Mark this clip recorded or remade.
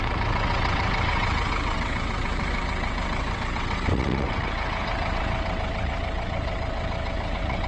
remade